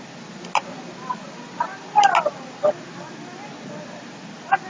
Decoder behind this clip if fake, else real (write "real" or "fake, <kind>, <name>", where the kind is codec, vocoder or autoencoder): real